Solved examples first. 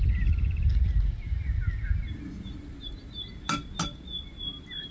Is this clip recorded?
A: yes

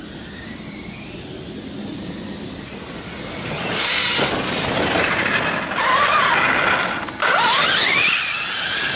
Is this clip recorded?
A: yes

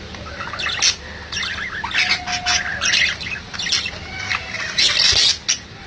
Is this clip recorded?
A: yes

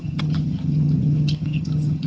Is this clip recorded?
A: no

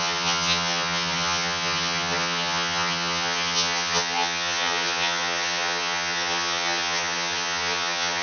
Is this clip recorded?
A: no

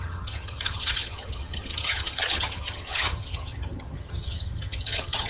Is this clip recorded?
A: no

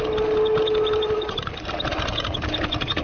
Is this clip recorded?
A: yes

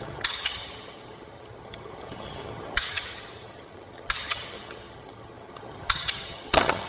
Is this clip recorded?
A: no